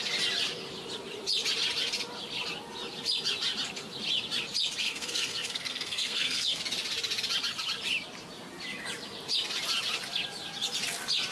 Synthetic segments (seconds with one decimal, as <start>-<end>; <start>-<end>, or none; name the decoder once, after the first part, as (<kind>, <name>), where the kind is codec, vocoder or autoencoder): 4.8-6.6 (codec, SNAC)